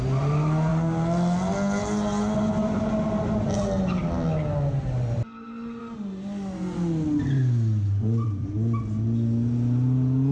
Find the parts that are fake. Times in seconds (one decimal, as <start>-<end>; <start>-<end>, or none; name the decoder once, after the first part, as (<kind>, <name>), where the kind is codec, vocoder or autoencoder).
none